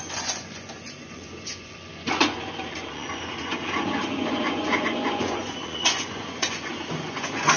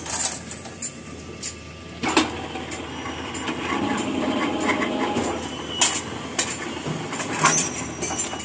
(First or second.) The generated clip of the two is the first